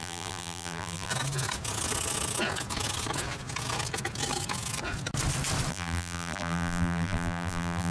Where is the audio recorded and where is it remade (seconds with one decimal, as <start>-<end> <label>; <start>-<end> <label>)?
0.0-1.1 remade; 1.1-5.7 recorded; 5.7-7.9 remade

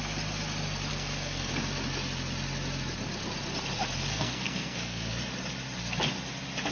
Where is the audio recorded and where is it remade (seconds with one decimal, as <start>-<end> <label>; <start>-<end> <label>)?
0.0-0.9 recorded; 0.9-1.5 remade; 1.5-4.1 recorded; 4.1-5.2 remade; 5.2-6.7 recorded

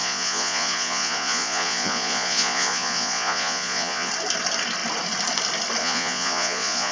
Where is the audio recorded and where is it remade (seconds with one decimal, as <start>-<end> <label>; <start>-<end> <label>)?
0.0-4.1 remade; 4.1-5.8 recorded; 5.8-6.9 remade

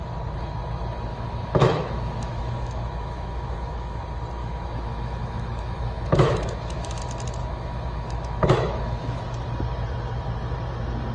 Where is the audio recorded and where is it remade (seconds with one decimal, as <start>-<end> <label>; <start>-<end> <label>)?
0.0-1.1 recorded; 1.1-4.0 remade; 4.0-4.4 recorded; 4.4-7.0 remade; 7.0-7.4 recorded; 7.4-9.2 remade; 9.2-11.1 recorded

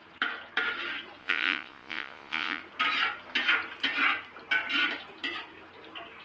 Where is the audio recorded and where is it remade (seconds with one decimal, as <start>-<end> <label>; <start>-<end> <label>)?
0.0-1.2 recorded; 1.2-2.6 remade; 2.6-6.2 recorded